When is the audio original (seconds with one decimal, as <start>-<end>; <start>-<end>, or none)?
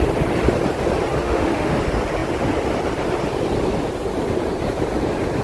0.0-1.2; 1.7-5.4